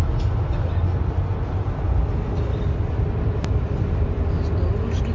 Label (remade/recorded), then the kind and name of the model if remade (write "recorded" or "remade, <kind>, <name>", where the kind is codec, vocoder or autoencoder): recorded